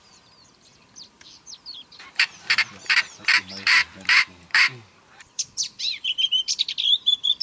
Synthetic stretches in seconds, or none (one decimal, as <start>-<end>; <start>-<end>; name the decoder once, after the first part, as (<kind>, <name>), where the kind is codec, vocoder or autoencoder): 0.0-7.4 (vocoder, BigVGAN v2)